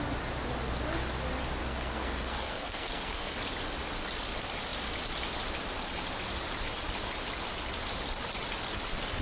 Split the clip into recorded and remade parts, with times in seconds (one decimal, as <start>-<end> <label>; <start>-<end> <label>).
0.0-1.6 recorded; 1.6-3.3 remade; 3.3-9.2 recorded

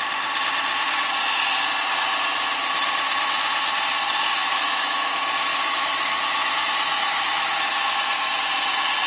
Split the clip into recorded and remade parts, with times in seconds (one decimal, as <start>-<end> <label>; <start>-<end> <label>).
0.0-4.4 recorded; 4.4-5.1 remade; 5.1-5.5 recorded; 5.5-7.8 remade; 7.8-9.1 recorded

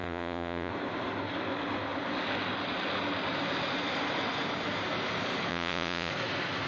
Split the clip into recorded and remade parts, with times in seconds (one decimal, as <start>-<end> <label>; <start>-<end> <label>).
0.0-0.7 remade; 0.7-5.5 recorded; 5.5-6.1 remade; 6.1-6.7 recorded

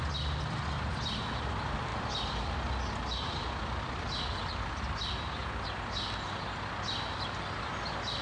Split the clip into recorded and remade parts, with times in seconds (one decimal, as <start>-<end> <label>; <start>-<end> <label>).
0.0-8.2 recorded

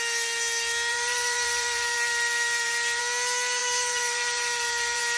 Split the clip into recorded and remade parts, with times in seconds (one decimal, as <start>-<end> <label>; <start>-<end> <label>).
0.0-0.9 recorded; 0.9-3.0 remade; 3.0-3.6 recorded; 3.6-5.2 remade